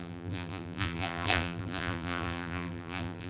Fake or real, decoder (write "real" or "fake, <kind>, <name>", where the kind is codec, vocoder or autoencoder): fake, vocoder, BigVGAN v2